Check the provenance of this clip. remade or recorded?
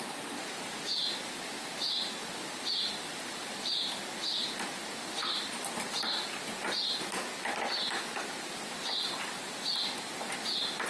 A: recorded